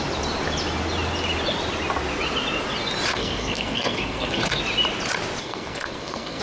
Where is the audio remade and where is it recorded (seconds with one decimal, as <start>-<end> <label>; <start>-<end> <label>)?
0.0-3.1 recorded; 3.1-4.6 remade; 4.6-5.4 recorded; 5.4-6.4 remade